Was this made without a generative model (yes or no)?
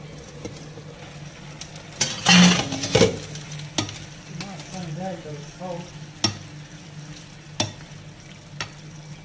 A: yes